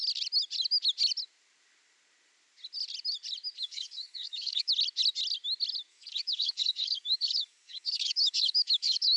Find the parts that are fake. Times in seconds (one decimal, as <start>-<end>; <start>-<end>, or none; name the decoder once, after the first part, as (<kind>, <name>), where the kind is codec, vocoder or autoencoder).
3.6-4.7 (codec, DAC); 5.9-9.2